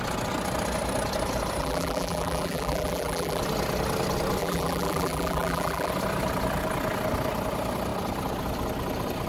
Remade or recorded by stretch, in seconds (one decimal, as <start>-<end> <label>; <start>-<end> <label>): 0.0-1.6 recorded; 1.6-3.4 remade; 3.4-4.4 recorded; 4.4-5.9 remade; 5.9-9.3 recorded